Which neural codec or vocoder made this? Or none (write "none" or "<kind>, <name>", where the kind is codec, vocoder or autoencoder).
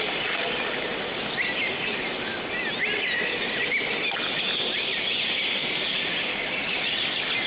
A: none